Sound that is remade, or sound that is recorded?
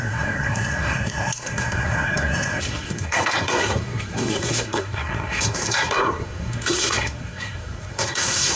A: remade